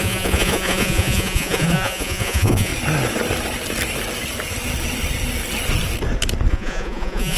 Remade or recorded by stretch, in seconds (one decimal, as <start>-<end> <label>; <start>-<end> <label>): 0.0-2.7 remade; 2.7-6.5 recorded; 6.5-7.4 remade